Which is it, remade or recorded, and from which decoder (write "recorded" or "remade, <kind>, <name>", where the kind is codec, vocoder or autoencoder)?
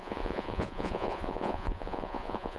remade, vocoder, Vocos